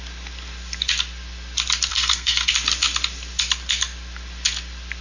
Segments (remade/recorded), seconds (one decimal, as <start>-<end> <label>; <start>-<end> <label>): 0.0-1.9 recorded; 1.9-2.5 remade; 2.5-5.0 recorded